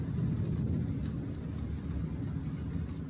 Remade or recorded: recorded